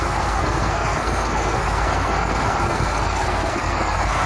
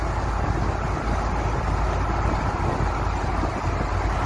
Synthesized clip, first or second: first